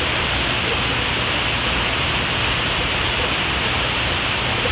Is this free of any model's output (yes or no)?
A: yes